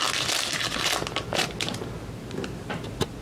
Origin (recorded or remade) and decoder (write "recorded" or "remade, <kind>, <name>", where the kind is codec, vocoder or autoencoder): recorded